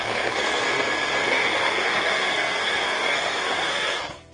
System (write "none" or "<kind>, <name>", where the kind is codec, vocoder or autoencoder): codec, SNAC